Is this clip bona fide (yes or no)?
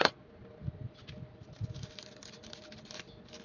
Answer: yes